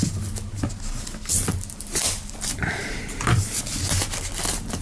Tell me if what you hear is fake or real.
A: real